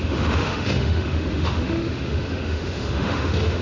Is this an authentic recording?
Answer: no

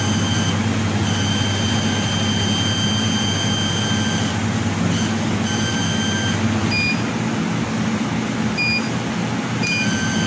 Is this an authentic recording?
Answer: yes